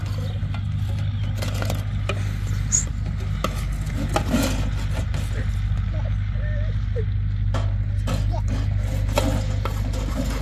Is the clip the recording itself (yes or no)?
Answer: yes